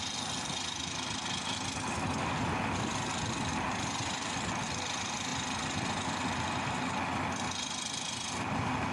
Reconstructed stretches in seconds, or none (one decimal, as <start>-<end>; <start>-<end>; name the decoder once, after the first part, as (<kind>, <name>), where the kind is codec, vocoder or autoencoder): none